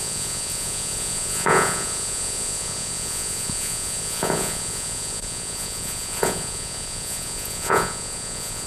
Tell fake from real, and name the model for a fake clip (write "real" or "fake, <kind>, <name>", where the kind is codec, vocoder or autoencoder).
fake, vocoder, Vocos